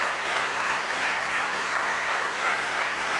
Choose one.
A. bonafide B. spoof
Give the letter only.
B